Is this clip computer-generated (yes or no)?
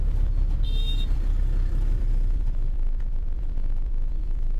yes